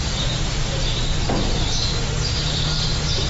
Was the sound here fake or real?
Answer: real